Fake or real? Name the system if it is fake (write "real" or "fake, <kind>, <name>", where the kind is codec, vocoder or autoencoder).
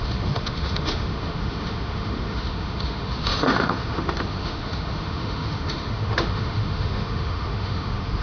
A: fake, autoencoder, DAC-VAE